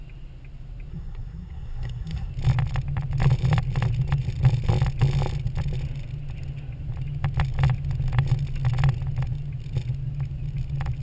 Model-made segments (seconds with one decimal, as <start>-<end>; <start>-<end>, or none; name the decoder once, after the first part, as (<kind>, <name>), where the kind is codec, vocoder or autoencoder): 0.9-2.3 (codec, SNAC)